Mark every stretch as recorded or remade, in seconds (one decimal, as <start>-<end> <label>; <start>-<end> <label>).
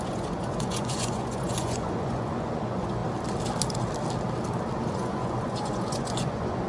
0.0-3.0 remade; 3.0-4.9 recorded; 4.9-6.7 remade